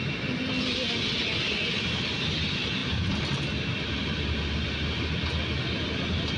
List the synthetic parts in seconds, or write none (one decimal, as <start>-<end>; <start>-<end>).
none